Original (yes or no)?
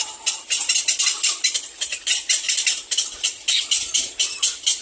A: yes